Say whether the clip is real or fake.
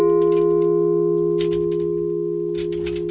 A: real